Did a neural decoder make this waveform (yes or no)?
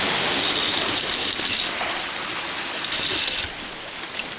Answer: no